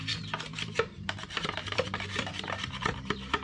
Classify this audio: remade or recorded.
remade